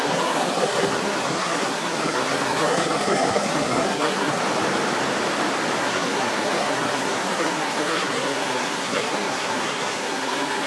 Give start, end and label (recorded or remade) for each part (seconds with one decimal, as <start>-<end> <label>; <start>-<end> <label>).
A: 0.0-4.4 remade; 4.4-5.8 recorded; 5.8-10.7 remade